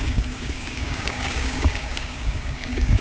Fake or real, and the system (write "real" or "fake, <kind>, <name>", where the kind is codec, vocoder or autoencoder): fake, codec, DAC